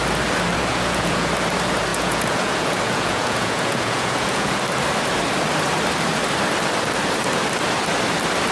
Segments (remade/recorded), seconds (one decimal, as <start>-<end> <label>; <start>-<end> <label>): 0.0-0.7 recorded; 0.7-1.3 remade; 1.3-1.9 recorded; 1.9-4.6 remade; 4.6-8.5 recorded